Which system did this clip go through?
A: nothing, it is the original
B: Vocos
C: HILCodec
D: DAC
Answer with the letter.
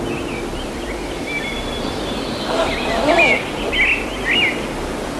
A